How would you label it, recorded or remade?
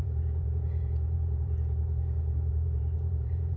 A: remade